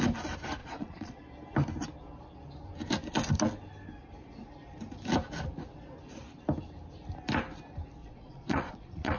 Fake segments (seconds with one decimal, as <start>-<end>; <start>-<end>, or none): 0.6-1.2; 8.0-9.2